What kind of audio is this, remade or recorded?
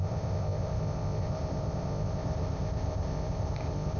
remade